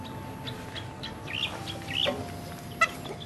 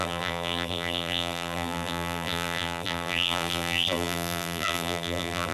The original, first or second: first